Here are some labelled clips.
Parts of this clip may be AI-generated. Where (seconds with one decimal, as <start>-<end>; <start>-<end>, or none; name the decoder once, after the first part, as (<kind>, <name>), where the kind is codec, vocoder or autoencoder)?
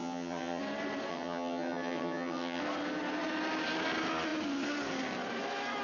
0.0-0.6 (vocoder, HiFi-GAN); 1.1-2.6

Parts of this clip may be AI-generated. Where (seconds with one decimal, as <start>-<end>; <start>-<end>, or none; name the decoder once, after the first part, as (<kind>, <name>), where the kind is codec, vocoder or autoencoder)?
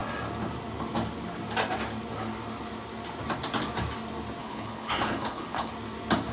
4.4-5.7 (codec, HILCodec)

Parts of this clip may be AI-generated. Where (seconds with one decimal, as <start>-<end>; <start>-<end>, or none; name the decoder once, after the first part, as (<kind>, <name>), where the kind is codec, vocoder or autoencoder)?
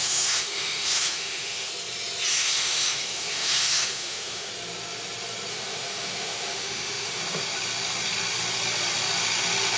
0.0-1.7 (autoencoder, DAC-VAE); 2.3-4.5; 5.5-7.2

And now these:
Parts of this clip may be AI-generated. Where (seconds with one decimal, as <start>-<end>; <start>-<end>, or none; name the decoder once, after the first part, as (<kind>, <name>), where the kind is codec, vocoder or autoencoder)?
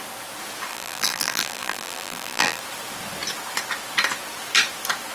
0.7-2.6 (vocoder, BigVGAN v2)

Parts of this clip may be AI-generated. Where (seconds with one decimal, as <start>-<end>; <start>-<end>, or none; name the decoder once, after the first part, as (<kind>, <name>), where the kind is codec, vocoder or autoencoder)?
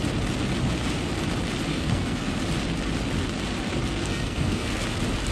1.7-2.4 (codec, SNAC); 3.9-4.8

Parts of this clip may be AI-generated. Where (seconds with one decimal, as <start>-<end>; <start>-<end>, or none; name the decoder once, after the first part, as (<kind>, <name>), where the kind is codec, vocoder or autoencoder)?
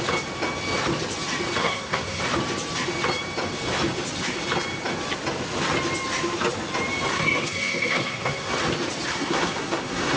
1.6-2.2 (codec, SNAC); 7.1-8.5; 9.1-10.2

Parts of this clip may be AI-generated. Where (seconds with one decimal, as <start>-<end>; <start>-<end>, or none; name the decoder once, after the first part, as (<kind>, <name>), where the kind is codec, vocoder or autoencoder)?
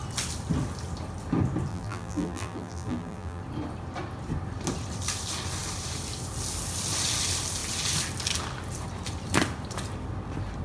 1.7-3.4 (vocoder, BigVGAN v2)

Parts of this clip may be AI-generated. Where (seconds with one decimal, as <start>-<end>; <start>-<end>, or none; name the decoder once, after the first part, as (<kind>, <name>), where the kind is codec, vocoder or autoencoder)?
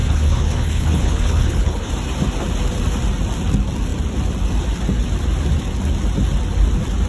0.0-1.9 (codec, HILCodec)